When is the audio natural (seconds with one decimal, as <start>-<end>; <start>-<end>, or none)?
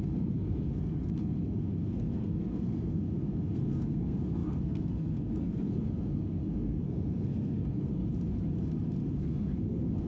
8.0-9.1